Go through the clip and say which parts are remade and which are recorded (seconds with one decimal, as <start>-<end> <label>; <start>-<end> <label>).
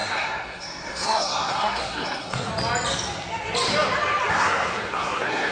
0.0-2.5 remade; 2.5-4.3 recorded; 4.3-5.5 remade